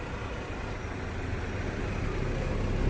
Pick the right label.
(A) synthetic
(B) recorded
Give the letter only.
B